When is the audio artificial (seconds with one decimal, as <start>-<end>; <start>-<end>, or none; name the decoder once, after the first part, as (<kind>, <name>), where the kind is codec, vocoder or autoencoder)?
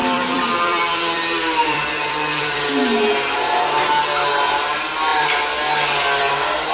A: 0.0-2.6 (vocoder, BigVGAN v2)